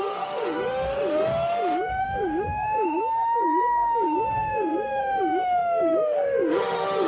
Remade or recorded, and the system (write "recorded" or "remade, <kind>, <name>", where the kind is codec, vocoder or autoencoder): remade, autoencoder, DAC-VAE